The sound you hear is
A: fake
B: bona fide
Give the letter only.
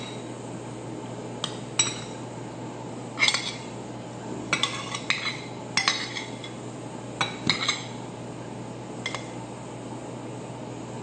B